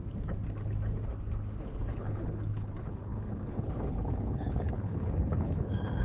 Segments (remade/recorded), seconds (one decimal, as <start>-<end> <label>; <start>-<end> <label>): 0.0-1.6 recorded; 1.6-6.0 remade